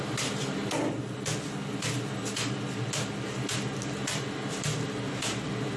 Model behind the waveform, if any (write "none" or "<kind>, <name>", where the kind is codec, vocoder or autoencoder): none